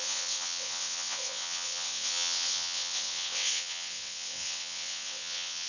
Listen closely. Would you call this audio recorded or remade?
remade